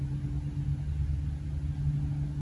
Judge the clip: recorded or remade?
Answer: recorded